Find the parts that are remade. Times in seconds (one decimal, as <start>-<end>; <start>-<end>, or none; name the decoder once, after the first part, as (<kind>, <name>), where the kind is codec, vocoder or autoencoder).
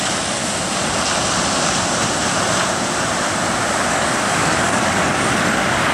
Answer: 0.0-0.4 (codec, DAC); 3.9-5.9